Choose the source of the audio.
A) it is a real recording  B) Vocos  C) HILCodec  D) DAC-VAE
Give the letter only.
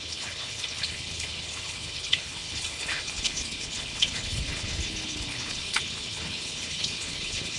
C